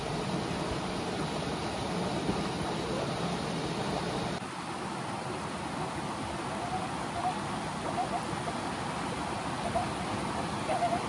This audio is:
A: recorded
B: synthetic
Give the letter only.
A